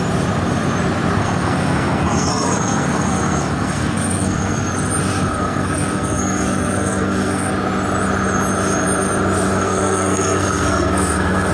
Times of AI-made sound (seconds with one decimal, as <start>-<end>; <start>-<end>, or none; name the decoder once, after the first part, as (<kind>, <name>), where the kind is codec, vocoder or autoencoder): 1.2-4.7 (codec, SNAC); 5.3-7.5; 9.5-11.5